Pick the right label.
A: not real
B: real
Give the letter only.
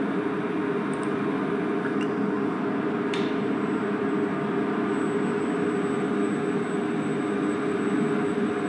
B